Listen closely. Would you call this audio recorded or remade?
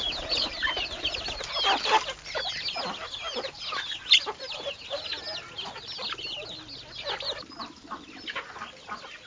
recorded